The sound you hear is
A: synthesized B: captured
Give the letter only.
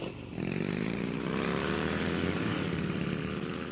A